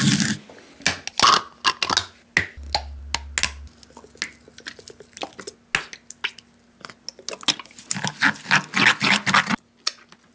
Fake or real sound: real